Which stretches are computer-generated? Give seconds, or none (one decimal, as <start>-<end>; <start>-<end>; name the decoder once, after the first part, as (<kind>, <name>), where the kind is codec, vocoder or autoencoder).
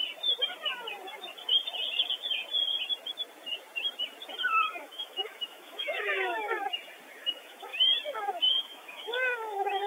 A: 4.8-6.5 (autoencoder, DAC-VAE); 7.2-7.7; 8.6-9.9